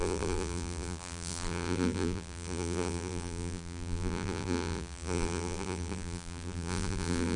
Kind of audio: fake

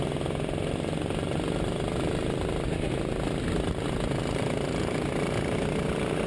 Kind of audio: real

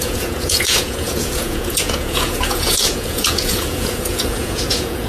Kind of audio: fake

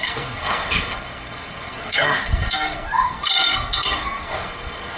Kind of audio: fake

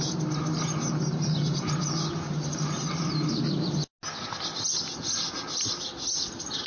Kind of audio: real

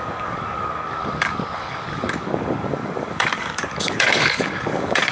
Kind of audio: fake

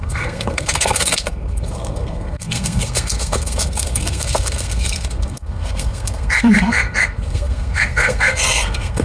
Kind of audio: fake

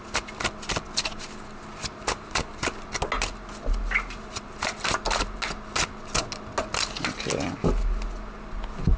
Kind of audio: real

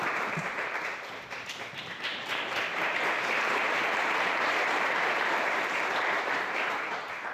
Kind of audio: fake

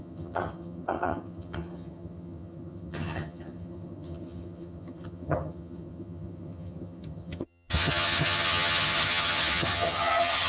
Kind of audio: fake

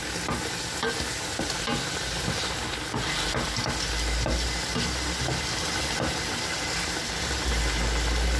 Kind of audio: real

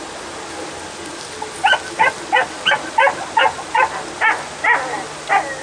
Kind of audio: real